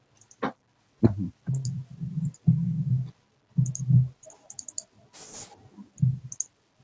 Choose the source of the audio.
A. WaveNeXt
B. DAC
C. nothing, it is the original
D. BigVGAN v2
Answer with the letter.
C